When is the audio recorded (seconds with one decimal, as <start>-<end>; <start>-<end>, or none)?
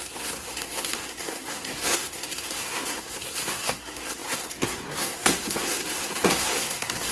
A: none